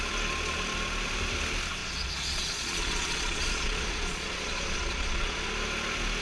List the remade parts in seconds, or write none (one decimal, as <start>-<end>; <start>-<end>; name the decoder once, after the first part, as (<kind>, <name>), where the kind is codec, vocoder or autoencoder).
1.8-5.5 (vocoder, Vocos)